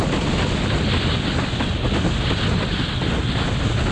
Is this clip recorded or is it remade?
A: recorded